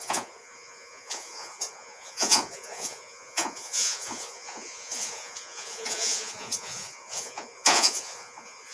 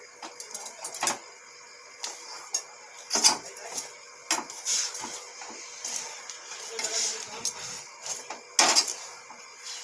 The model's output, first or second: first